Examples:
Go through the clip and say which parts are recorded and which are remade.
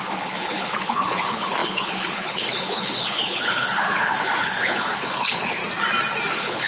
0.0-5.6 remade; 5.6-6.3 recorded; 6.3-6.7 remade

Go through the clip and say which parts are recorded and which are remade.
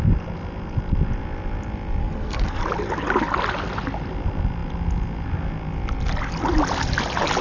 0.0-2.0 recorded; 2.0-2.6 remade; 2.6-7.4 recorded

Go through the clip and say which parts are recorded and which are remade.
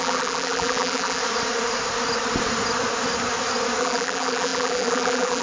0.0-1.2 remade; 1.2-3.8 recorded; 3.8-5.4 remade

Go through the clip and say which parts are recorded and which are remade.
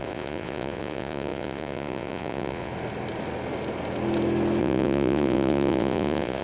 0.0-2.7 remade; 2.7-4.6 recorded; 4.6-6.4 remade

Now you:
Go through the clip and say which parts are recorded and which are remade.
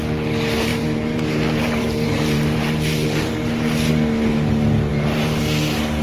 0.0-0.7 recorded; 0.7-3.9 remade; 3.9-4.9 recorded; 4.9-5.4 remade; 5.4-6.0 recorded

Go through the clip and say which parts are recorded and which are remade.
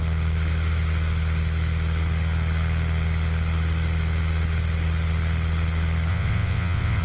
0.0-6.1 recorded; 6.1-7.0 remade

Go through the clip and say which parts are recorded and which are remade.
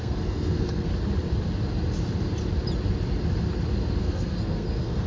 0.0-0.9 remade; 0.9-4.0 recorded; 4.0-5.1 remade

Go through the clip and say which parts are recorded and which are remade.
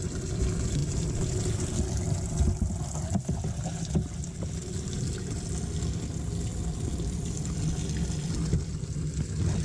0.0-6.5 recorded; 6.5-7.4 remade; 7.4-9.6 recorded